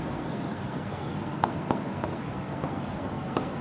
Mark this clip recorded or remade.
remade